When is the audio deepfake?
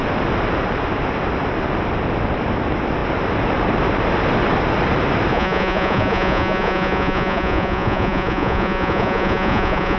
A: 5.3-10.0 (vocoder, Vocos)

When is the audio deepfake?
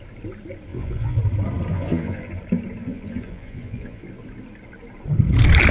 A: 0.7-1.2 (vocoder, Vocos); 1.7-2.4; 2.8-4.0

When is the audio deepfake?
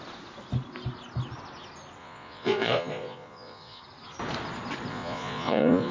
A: 2.0-3.8 (vocoder, Vocos); 4.9-5.9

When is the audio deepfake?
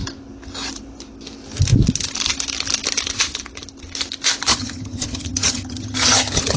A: 4.5-6.6 (vocoder, HiFi-GAN)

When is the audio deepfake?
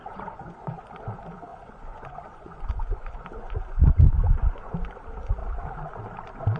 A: 0.0-0.9 (vocoder, Vocos); 1.5-4.7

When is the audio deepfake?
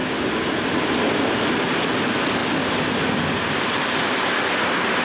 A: none